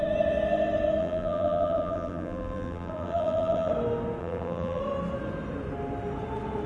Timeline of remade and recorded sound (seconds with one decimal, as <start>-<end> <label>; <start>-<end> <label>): 0.0-1.0 recorded; 1.0-3.7 remade; 3.7-4.2 recorded; 4.2-4.8 remade; 4.8-6.7 recorded

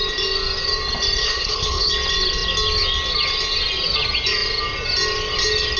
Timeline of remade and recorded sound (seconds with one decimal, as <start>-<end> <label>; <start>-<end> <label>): 0.0-1.2 recorded; 1.2-1.9 remade; 1.9-5.8 recorded

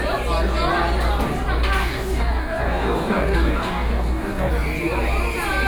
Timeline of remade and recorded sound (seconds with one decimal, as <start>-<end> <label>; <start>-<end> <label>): 0.0-1.8 recorded; 1.8-4.5 remade; 4.5-5.7 recorded